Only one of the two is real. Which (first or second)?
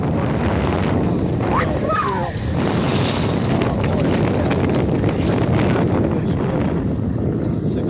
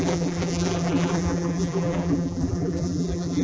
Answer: first